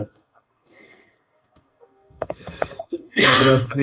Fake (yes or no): yes